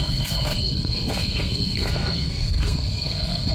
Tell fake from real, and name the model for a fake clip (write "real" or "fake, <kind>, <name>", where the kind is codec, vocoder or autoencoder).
fake, codec, SNAC